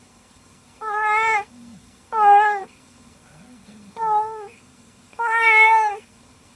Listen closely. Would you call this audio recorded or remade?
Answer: remade